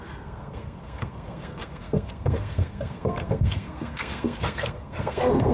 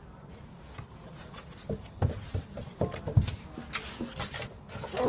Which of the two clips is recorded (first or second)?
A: second